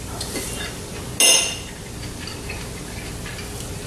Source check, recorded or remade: recorded